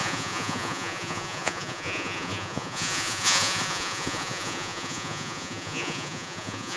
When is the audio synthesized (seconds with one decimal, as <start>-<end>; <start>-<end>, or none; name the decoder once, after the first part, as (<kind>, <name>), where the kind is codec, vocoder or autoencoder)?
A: 0.0-6.8 (vocoder, Vocos)